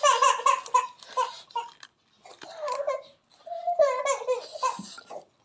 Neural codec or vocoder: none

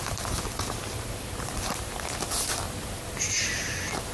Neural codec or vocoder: none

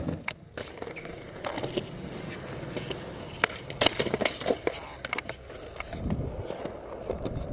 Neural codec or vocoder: none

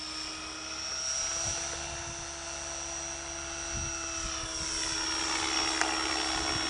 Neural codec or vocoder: none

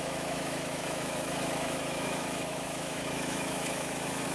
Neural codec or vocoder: autoencoder, DAC-VAE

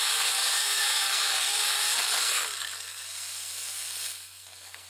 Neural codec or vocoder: codec, SNAC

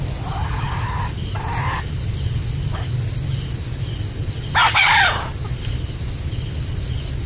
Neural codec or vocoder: none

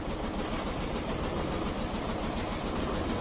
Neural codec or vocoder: none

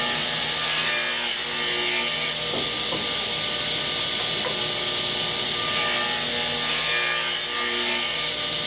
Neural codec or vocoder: none